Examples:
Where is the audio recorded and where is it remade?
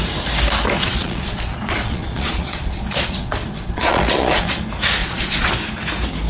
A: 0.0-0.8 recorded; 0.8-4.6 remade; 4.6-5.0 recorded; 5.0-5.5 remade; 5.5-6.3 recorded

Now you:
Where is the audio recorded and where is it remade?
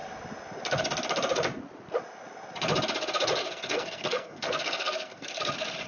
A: 0.0-3.4 recorded; 3.4-5.4 remade; 5.4-5.9 recorded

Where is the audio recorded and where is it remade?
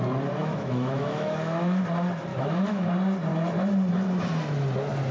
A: 0.0-0.4 recorded; 0.4-1.8 remade; 1.8-2.3 recorded; 2.3-2.9 remade; 2.9-5.1 recorded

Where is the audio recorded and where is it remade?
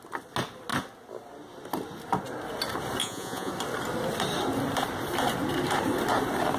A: 0.0-3.0 recorded; 3.0-3.5 remade; 3.5-6.6 recorded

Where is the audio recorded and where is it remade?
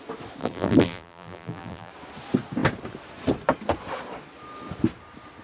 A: 0.0-0.4 recorded; 0.4-1.9 remade; 1.9-5.4 recorded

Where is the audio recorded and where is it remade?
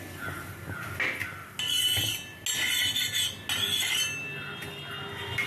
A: 0.0-5.5 recorded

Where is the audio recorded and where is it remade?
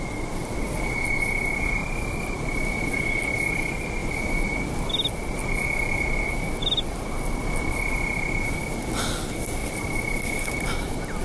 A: 0.0-1.8 recorded; 1.8-2.9 remade; 2.9-4.0 recorded; 4.0-4.7 remade; 4.7-9.6 recorded; 9.6-11.2 remade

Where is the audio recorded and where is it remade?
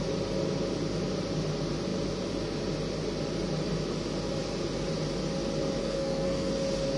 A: 0.0-5.8 recorded; 5.8-6.5 remade; 6.5-7.0 recorded